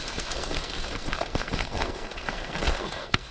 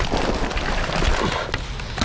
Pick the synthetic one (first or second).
first